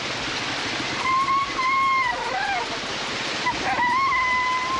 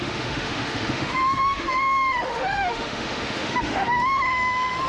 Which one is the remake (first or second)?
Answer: second